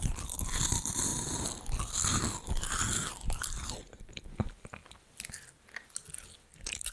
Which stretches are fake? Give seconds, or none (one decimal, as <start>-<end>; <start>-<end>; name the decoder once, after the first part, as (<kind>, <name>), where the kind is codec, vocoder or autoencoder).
none